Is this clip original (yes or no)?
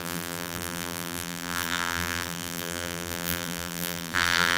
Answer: no